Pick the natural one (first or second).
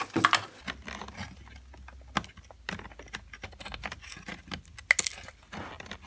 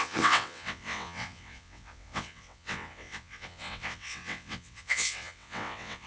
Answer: first